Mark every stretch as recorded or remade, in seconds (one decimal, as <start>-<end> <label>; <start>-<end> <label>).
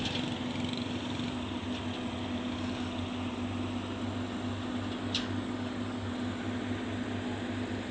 0.0-5.0 recorded; 5.0-6.1 remade; 6.1-7.9 recorded